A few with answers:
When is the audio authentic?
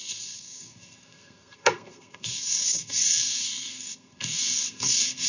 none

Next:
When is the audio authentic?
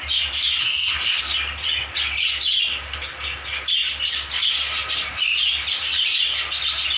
0.0-0.6; 1.2-7.0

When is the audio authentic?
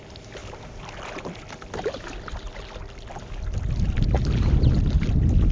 0.0-5.5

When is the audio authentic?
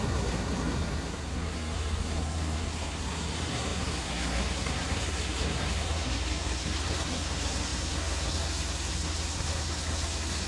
none